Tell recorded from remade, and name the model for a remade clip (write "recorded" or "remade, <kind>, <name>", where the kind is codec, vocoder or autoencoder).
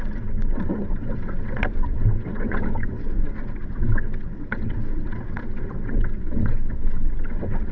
remade, vocoder, WaveNeXt